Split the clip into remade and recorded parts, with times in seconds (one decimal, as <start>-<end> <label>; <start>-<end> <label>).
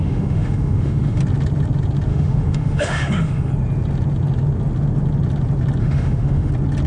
0.0-1.2 remade; 1.2-2.1 recorded; 2.1-3.5 remade; 3.5-5.8 recorded; 5.8-6.5 remade; 6.5-6.9 recorded